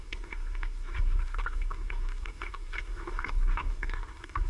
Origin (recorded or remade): remade